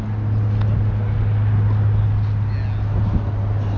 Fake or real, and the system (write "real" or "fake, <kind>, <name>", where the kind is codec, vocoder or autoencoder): real